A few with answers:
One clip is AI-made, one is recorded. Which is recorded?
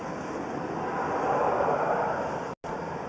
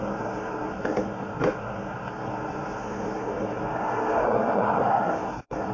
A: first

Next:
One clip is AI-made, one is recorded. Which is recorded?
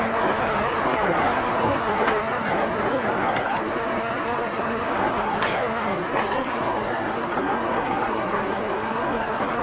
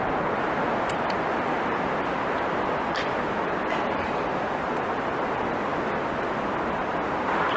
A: second